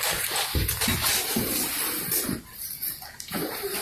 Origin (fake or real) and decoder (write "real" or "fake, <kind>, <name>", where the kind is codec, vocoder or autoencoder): real